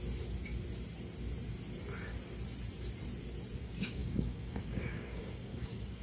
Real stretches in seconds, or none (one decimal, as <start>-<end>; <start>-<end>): 0.0-3.6